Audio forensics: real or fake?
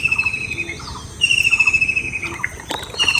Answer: real